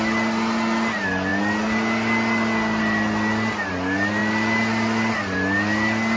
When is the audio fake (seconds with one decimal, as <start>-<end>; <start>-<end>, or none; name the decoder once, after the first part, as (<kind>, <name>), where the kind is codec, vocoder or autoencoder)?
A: none

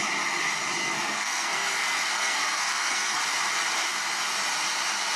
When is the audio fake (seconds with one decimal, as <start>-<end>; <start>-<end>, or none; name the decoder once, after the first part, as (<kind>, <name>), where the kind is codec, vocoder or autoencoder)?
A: 0.8-3.2 (codec, SNAC)